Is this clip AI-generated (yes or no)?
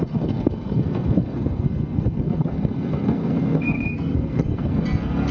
yes